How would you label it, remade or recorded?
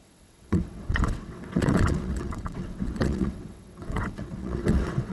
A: remade